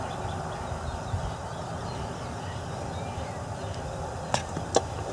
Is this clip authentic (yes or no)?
yes